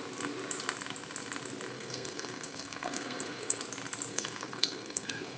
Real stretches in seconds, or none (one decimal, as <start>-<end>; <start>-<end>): 0.0-1.7; 3.6-4.1